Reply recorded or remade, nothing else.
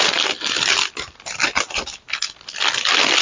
recorded